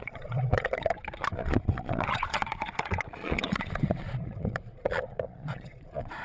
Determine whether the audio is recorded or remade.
remade